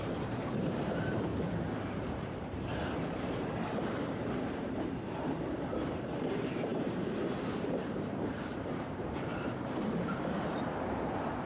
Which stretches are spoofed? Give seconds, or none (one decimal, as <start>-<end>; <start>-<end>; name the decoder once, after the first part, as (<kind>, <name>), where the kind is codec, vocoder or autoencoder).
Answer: 0.0-1.3 (vocoder, BigVGAN v2); 2.0-11.5

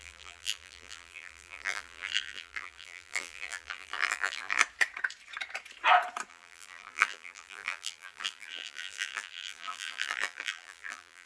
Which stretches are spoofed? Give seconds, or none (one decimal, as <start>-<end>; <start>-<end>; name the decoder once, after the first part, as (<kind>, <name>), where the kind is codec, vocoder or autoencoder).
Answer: 0.0-4.6 (vocoder, BigVGAN v2); 6.3-11.3

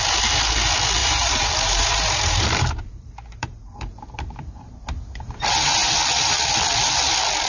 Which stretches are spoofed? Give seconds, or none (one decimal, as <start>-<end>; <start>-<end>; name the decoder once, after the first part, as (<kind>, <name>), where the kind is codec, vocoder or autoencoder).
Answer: 1.0-4.2 (vocoder, BigVGAN v2)

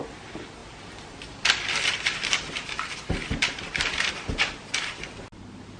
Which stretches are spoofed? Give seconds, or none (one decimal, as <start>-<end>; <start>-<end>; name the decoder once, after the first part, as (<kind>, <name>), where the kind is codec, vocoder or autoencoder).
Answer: 0.6-4.1 (vocoder, BigVGAN v2)